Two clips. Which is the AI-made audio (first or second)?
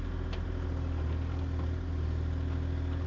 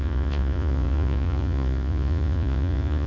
second